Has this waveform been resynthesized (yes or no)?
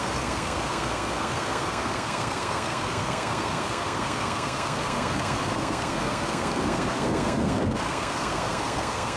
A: yes